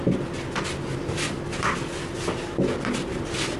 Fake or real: real